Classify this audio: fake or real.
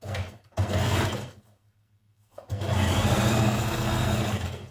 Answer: fake